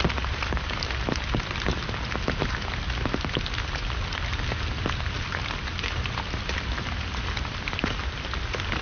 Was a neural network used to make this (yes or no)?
no